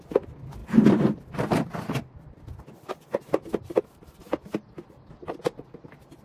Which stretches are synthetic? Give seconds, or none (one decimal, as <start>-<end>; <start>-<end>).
0.0-4.2; 5.3-6.2

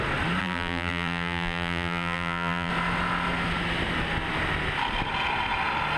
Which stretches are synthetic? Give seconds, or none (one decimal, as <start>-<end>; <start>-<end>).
0.4-2.7

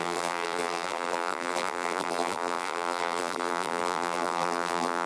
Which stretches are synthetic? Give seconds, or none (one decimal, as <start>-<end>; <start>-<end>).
0.0-5.1

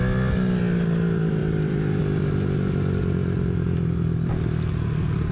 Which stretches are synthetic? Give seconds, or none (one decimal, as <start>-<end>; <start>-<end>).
1.4-2.0

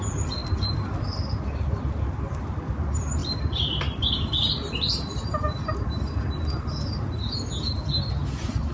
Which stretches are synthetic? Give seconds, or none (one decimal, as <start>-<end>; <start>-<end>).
3.2-4.0